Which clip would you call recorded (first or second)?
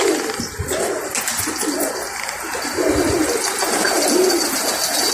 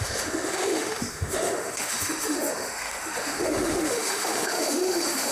first